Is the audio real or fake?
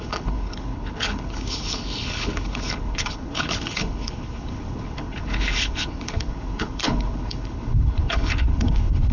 fake